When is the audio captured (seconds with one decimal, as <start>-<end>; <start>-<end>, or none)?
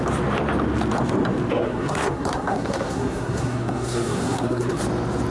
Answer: 0.0-1.6; 4.8-5.3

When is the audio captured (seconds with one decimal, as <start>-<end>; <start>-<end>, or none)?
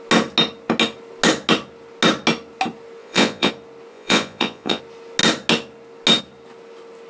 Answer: 0.0-3.0; 3.5-3.9; 4.8-7.1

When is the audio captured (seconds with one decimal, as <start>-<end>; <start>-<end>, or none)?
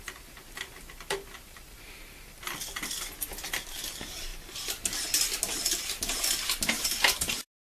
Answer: 0.0-7.6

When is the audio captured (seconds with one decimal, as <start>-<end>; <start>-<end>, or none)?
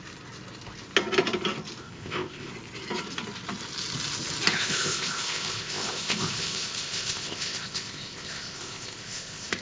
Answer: 0.0-1.8; 2.5-4.5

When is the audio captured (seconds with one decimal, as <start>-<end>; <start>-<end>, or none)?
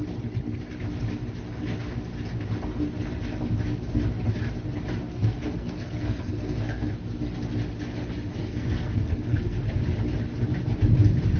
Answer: 0.0-5.0; 6.9-8.4; 9.7-11.4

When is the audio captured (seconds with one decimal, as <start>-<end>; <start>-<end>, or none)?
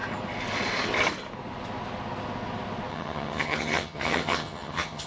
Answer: 0.0-2.9